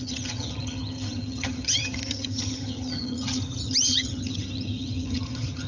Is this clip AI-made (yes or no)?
yes